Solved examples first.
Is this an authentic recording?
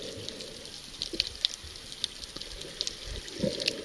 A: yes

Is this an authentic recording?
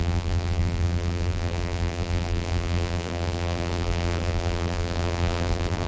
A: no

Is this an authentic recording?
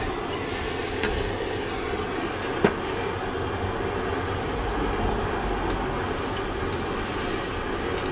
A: yes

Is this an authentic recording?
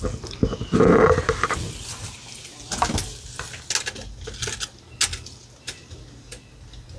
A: yes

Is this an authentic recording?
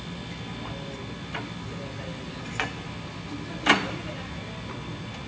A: yes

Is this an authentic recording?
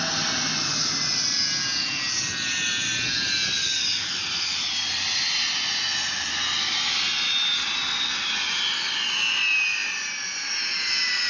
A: yes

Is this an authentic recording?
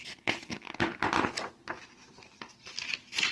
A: yes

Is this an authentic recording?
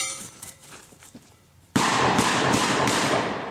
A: no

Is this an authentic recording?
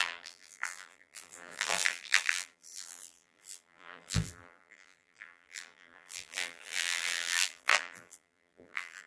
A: no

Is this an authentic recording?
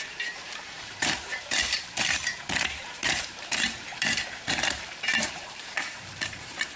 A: no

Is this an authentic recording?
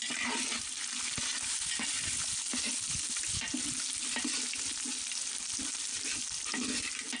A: yes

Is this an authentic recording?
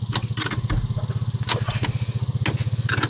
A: yes